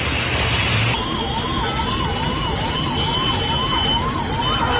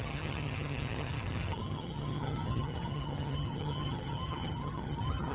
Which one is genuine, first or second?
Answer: first